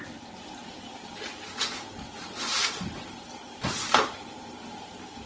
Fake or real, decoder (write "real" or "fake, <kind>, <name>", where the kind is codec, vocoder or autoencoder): real